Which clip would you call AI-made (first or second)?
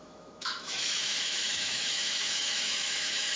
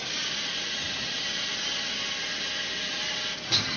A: first